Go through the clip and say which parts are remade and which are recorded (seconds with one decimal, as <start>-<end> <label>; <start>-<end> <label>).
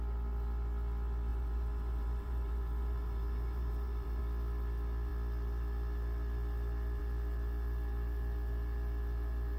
0.0-1.3 recorded; 1.3-4.2 remade; 4.2-9.6 recorded